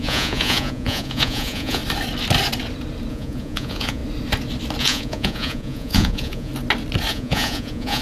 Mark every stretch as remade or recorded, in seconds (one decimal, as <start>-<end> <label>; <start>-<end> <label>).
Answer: 0.0-1.8 remade; 1.8-3.1 recorded; 3.1-4.0 remade; 4.0-4.8 recorded; 4.8-6.5 remade; 6.5-7.1 recorded; 7.1-8.0 remade